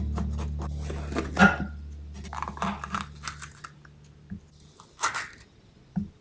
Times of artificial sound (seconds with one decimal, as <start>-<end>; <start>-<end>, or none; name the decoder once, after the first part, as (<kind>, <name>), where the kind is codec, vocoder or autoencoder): none